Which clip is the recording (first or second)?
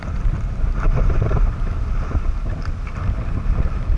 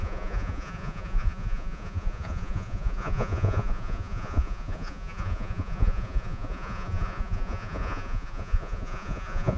first